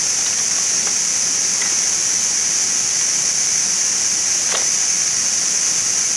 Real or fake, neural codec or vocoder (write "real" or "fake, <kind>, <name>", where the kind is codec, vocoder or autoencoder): real